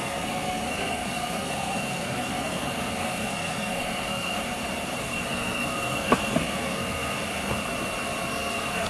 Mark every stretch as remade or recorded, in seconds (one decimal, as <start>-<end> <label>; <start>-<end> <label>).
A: 0.0-4.4 remade; 4.4-5.0 recorded; 5.0-7.5 remade; 7.5-8.3 recorded; 8.3-8.9 remade